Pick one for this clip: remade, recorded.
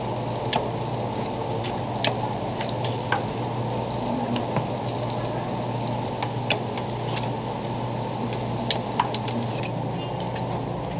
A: recorded